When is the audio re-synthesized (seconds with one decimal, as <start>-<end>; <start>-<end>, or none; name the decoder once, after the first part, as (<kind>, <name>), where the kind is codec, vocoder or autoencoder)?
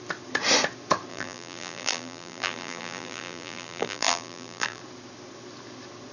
1.1-4.8 (vocoder, BigVGAN v2)